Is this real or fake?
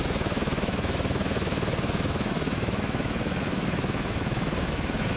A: fake